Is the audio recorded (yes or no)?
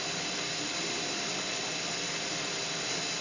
yes